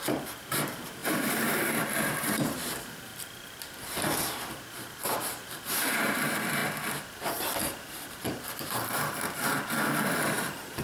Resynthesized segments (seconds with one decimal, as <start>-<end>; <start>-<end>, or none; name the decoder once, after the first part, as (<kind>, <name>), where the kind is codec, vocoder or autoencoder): 0.0-3.1 (vocoder, BigVGAN v2); 5.6-6.6; 7.5-10.8